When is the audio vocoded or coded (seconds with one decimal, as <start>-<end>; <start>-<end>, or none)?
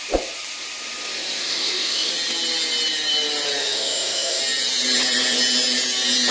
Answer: 1.4-2.1; 3.6-4.4